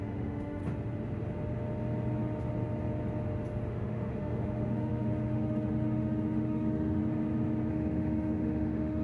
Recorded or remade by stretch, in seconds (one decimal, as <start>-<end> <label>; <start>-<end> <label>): 0.0-0.6 remade; 0.6-3.7 recorded; 3.7-7.0 remade; 7.0-7.7 recorded; 7.7-9.0 remade